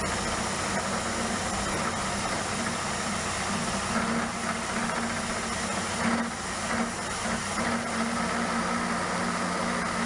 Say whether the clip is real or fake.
real